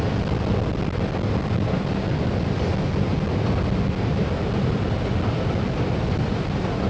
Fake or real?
real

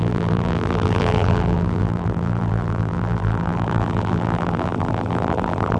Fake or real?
fake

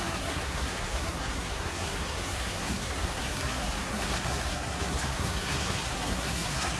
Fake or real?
fake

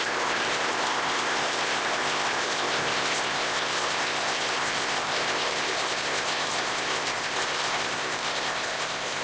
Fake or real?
fake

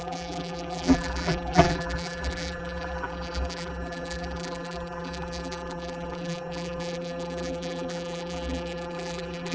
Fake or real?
fake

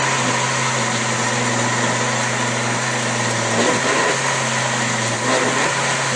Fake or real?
real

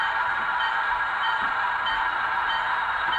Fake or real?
fake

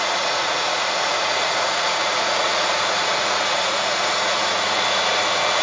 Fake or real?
fake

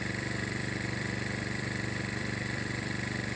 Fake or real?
fake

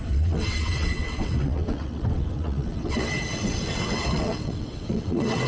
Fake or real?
fake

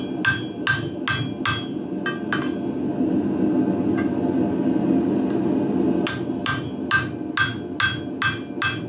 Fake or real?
real